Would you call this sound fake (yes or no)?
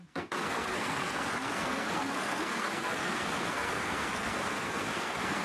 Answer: yes